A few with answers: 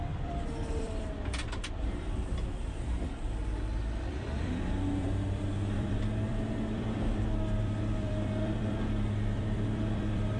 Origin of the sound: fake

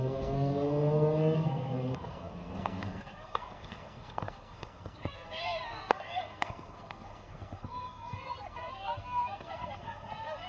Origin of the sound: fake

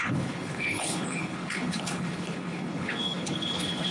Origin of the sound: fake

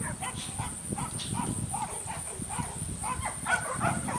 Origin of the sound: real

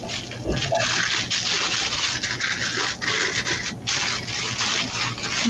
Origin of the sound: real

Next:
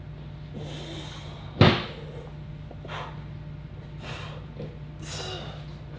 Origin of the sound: real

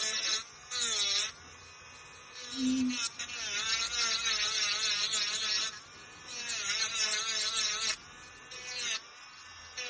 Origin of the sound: real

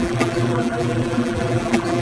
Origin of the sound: fake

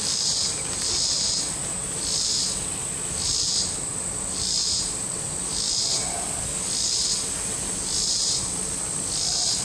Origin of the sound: real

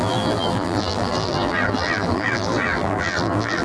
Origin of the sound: fake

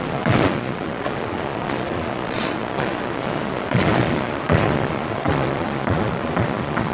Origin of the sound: fake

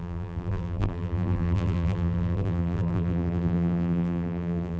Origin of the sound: fake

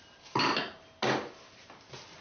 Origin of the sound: real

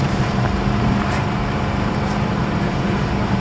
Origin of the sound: fake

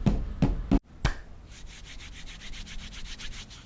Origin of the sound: real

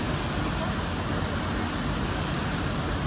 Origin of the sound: real